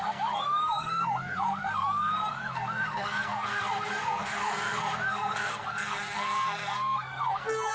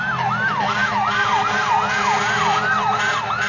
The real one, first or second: second